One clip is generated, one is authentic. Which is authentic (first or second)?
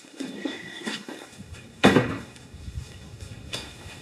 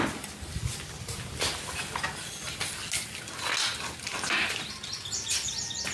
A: second